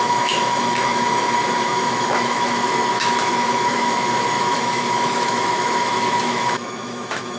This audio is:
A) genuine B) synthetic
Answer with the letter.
B